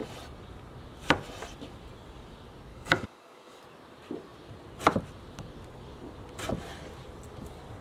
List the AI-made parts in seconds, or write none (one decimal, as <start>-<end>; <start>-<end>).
2.7-3.6